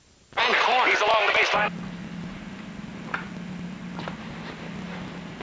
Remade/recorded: recorded